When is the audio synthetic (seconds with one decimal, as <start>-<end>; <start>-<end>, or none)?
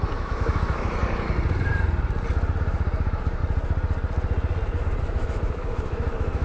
0.0-1.0; 2.6-3.4; 5.0-6.4